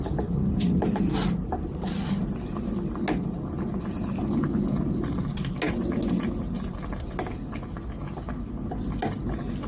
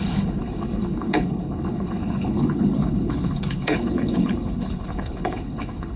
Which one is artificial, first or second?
second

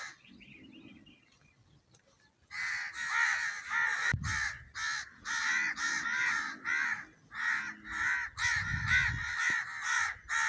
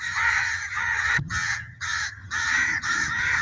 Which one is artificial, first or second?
second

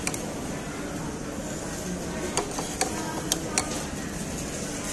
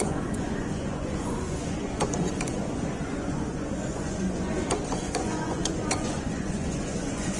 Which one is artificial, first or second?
second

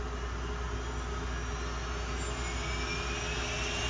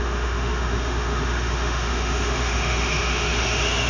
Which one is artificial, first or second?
second